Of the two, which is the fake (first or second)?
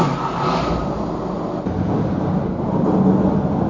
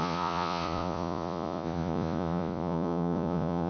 second